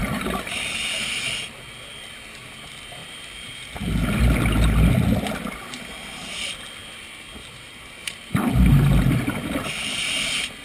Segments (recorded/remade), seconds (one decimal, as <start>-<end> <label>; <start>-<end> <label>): 0.0-3.0 recorded; 3.0-3.7 remade; 3.7-7.4 recorded; 7.4-8.5 remade; 8.5-10.6 recorded